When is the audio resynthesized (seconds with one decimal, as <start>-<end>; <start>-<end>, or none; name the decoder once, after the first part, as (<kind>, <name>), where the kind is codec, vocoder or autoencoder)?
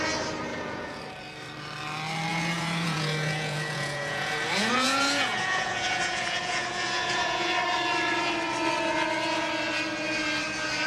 0.5-1.0 (vocoder, Vocos); 2.3-7.5